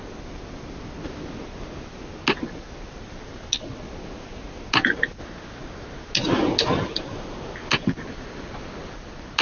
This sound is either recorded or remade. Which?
recorded